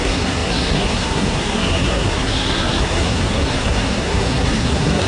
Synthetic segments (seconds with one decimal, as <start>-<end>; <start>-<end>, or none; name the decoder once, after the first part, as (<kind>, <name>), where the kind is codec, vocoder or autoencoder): 0.0-5.1 (codec, SNAC)